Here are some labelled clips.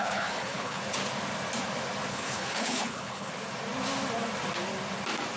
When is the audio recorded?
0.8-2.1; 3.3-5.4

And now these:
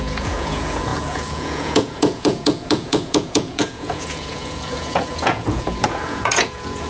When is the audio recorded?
none

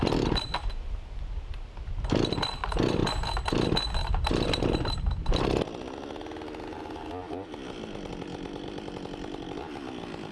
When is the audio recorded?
0.0-10.3